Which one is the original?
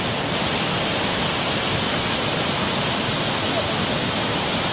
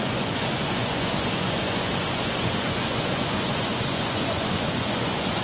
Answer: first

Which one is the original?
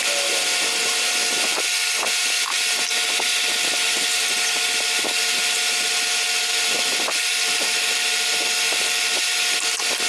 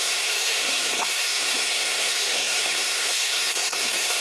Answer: first